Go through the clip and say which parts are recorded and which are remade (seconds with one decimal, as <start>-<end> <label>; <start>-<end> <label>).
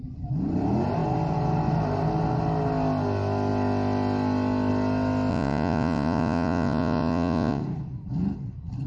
0.0-5.3 recorded; 5.3-7.6 remade; 7.6-8.9 recorded